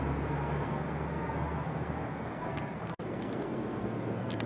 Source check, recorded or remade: remade